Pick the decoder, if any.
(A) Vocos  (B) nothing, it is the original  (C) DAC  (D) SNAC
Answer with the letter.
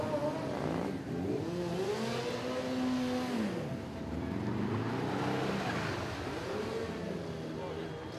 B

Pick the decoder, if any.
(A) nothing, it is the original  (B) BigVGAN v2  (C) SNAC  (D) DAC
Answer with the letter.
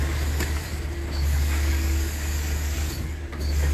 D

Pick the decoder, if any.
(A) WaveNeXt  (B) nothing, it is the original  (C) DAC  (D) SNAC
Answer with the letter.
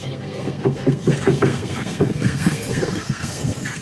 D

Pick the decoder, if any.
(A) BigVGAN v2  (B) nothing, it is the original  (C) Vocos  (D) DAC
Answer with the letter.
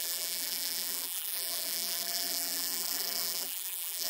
A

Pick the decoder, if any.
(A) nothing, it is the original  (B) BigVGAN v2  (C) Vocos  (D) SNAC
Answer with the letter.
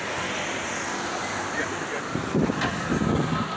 A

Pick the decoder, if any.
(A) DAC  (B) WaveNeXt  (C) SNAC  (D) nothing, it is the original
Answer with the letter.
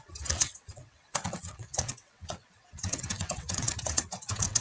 B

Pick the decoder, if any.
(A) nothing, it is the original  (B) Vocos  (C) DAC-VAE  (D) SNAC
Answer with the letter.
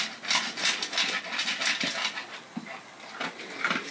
A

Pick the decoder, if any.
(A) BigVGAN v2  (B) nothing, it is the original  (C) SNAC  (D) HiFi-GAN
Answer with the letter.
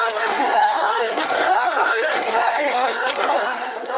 C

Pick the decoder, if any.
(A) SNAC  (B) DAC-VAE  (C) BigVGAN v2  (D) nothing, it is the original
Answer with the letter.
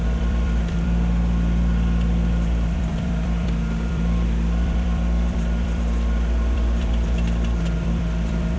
C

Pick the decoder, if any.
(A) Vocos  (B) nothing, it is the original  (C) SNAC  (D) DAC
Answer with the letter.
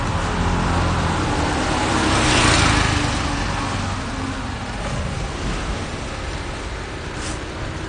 B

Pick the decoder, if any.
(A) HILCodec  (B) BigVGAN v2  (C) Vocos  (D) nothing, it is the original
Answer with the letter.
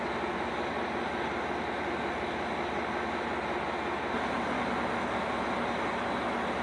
D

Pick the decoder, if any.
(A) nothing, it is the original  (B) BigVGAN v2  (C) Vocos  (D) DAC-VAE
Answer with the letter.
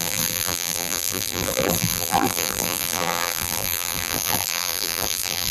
B